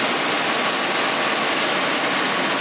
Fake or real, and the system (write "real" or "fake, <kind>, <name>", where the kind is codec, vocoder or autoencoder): real